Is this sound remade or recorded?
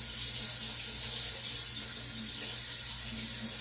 recorded